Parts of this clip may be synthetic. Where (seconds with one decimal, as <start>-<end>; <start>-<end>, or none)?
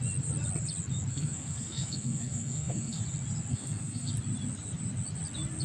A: 1.1-3.0; 3.5-4.1